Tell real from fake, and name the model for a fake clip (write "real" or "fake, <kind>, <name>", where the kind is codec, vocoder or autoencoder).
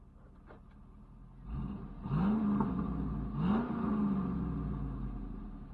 real